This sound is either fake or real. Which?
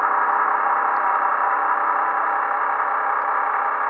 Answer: real